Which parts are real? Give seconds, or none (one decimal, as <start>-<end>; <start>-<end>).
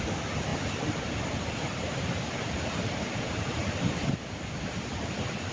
0.0-5.5